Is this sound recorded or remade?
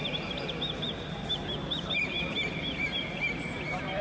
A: remade